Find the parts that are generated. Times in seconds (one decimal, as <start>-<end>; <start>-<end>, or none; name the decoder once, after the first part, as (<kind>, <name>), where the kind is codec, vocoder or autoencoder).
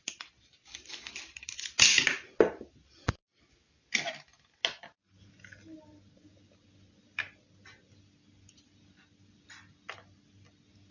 0.6-1.1 (codec, DAC)